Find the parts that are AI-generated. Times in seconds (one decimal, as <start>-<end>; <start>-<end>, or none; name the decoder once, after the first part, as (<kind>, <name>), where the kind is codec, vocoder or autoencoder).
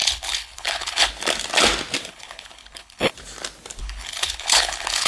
0.0-1.1 (codec, HILCodec); 2.1-3.1; 3.8-5.1